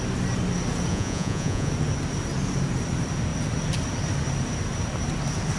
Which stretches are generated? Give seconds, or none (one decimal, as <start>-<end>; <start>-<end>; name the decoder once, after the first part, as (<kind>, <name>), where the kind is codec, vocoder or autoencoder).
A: 0.9-1.7 (vocoder, Vocos)